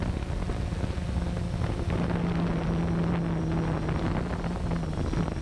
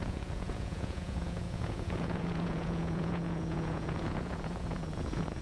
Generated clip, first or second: second